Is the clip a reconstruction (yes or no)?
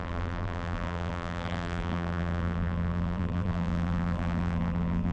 yes